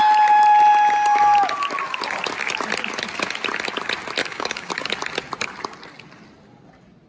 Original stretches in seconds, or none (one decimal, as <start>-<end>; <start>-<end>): 0.0-4.2; 4.7-7.1